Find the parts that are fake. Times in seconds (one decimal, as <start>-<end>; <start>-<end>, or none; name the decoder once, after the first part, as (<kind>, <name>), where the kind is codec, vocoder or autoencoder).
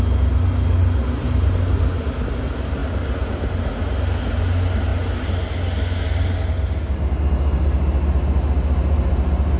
none